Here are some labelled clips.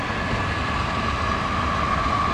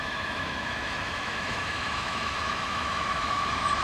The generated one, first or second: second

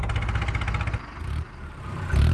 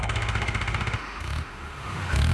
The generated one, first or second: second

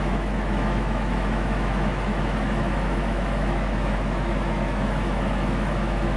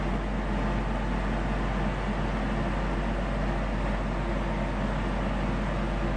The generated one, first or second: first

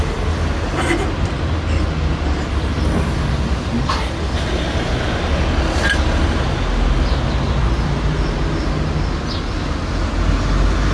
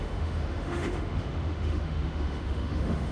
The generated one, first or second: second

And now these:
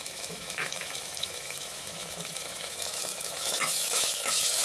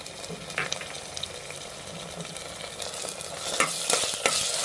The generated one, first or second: first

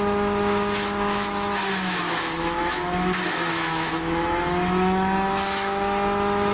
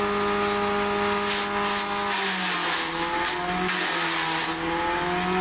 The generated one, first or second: first